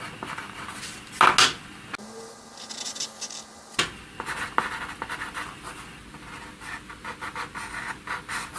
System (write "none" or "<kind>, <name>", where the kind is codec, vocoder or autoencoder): none